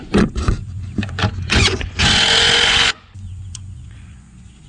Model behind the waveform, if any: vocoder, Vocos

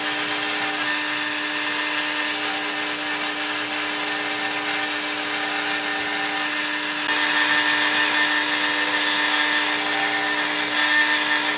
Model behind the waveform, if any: none